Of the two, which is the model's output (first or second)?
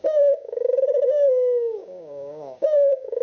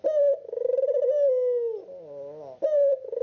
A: first